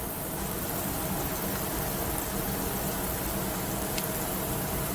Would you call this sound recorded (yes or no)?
yes